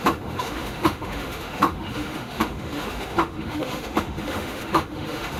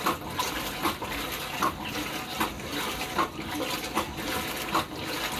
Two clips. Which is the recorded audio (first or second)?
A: second